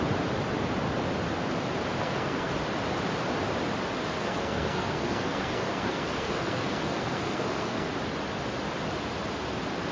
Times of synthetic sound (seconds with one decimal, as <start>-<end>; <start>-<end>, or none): 2.0-2.5; 4.2-7.9